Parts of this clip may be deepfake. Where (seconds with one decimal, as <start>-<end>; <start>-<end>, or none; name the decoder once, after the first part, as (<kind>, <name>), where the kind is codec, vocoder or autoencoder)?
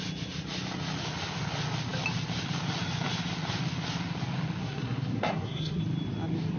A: 4.6-5.8 (codec, SNAC)